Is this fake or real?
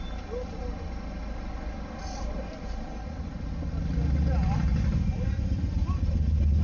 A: real